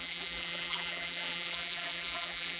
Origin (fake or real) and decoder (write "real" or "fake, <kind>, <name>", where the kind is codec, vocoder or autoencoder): fake, vocoder, BigVGAN v2